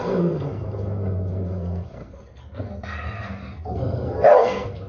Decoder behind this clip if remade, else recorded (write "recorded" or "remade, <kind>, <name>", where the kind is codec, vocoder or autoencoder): remade, codec, SNAC